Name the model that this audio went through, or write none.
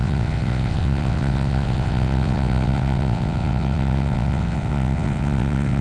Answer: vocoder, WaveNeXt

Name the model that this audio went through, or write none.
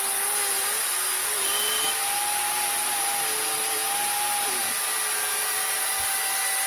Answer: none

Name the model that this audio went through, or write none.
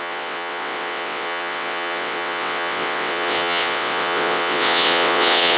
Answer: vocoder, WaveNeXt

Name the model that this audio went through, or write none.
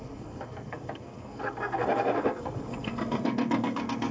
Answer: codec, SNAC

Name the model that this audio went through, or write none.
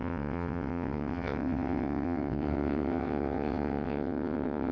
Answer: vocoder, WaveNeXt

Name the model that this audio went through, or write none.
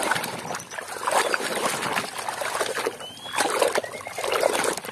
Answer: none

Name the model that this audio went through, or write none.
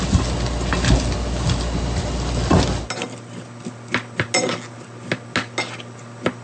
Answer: none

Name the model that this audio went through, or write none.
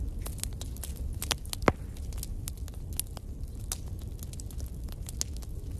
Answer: none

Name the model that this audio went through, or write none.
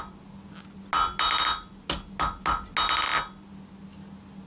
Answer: none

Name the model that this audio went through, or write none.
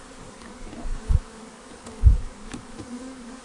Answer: codec, DAC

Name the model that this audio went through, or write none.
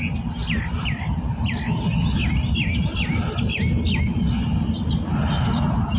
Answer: none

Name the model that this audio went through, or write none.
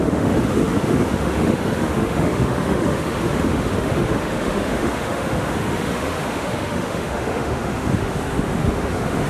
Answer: autoencoder, DAC-VAE